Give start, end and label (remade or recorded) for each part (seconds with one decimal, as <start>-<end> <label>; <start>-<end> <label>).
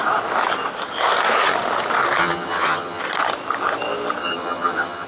0.0-2.2 recorded; 2.2-3.0 remade; 3.0-4.2 recorded; 4.2-5.1 remade